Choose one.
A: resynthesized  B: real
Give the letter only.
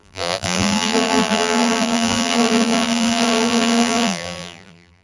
A